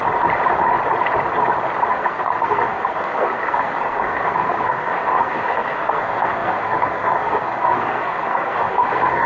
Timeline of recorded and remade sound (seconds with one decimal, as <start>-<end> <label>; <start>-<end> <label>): 0.0-1.9 recorded; 1.9-9.3 remade